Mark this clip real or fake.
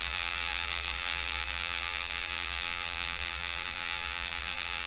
fake